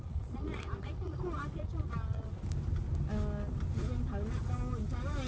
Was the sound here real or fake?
real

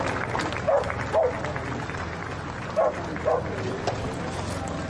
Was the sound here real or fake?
real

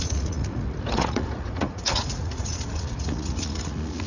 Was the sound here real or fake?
fake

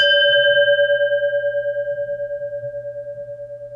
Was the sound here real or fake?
real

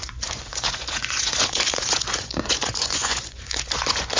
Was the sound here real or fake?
fake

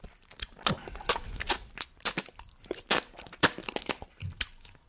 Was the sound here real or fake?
fake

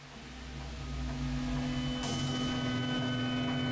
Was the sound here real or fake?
real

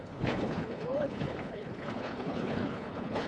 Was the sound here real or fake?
fake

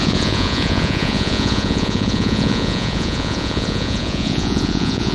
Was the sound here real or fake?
fake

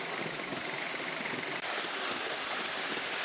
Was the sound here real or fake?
real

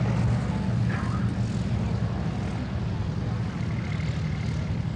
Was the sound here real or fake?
real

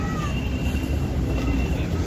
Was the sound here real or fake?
real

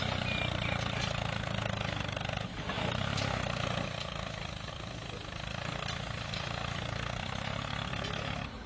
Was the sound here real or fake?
real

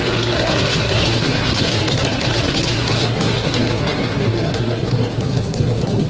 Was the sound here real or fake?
fake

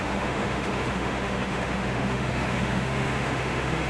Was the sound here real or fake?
fake